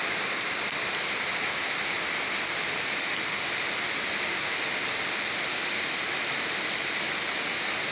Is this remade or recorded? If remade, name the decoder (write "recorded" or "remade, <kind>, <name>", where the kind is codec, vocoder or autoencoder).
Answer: recorded